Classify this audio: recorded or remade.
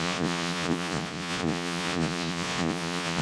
remade